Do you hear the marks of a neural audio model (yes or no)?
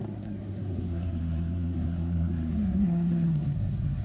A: yes